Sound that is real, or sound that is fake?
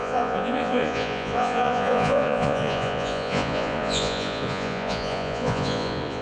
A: fake